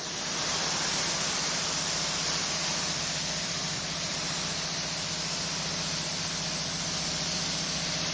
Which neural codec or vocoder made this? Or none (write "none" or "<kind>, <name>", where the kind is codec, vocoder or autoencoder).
vocoder, BigVGAN v2